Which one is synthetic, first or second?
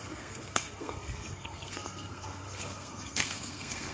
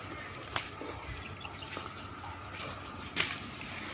first